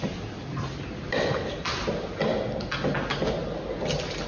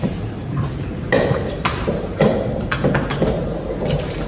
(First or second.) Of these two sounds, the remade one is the second